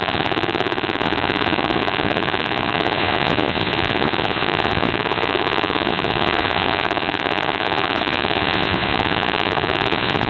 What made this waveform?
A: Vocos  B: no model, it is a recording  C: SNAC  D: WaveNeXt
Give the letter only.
A